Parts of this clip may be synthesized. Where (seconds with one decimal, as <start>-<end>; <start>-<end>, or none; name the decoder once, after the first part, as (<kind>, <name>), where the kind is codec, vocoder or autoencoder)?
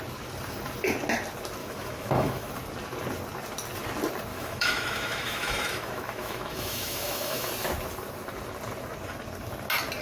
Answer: 1.6-2.5 (autoencoder, DAC-VAE); 4.3-7.5